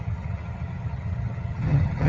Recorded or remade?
remade